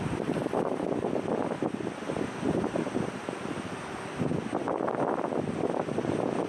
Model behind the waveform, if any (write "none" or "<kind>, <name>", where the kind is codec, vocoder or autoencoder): none